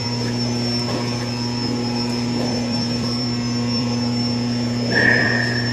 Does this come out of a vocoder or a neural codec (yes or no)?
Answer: yes